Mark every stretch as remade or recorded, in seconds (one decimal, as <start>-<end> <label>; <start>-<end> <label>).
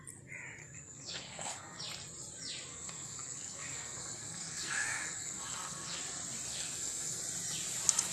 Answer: 0.0-0.6 recorded; 0.6-1.8 remade; 1.8-2.7 recorded; 2.7-6.0 remade; 6.0-6.5 recorded; 6.5-7.2 remade; 7.2-8.1 recorded